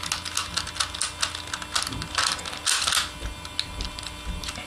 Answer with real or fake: real